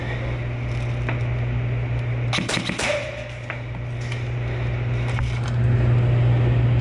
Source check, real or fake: real